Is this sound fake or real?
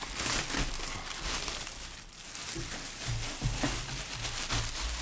real